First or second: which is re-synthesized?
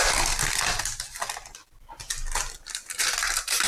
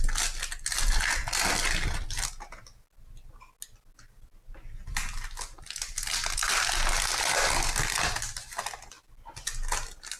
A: first